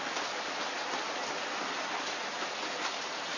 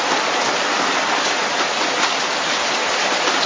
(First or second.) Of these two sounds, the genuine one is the second